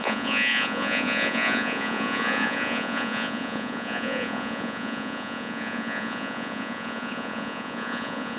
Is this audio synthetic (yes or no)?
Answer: yes